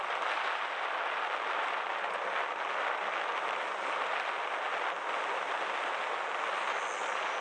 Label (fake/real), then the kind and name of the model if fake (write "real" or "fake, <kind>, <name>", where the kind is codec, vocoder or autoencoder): real